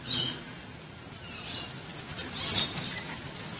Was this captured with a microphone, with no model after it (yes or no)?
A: no